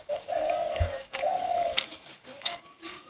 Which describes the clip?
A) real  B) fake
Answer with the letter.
B